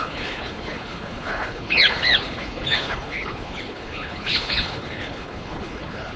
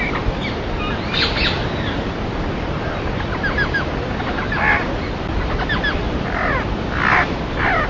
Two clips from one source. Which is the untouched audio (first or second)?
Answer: second